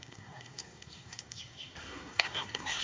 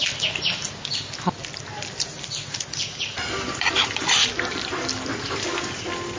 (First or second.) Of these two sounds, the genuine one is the second